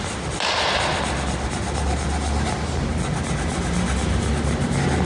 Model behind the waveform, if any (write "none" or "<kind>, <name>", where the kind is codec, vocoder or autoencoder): none